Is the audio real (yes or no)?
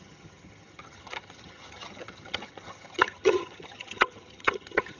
no